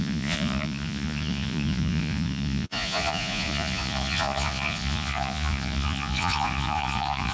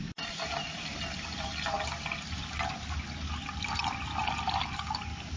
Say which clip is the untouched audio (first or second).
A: second